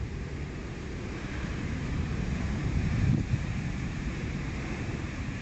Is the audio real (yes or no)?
no